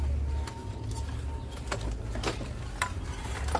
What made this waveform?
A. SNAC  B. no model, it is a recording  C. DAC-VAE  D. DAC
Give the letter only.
B